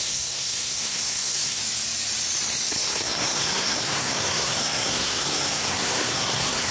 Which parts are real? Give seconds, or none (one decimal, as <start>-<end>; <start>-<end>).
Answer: 1.6-2.7